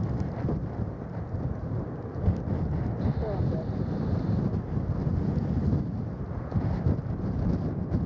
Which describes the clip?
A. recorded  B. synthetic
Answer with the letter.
A